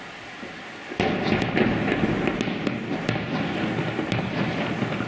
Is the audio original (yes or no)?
yes